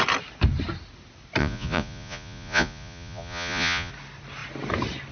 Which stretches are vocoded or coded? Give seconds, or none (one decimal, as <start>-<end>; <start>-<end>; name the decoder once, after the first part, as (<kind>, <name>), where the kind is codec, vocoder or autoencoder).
1.4-3.9 (vocoder, Vocos)